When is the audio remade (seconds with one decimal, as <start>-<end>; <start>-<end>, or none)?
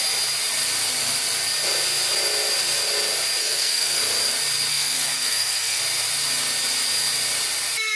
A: 3.4-4.0; 4.7-5.8